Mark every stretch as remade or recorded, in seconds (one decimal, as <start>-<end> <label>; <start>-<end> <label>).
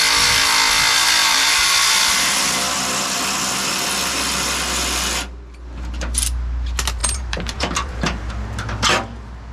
0.0-1.2 recorded; 1.2-1.7 remade; 1.7-7.0 recorded; 7.0-8.3 remade; 8.3-9.5 recorded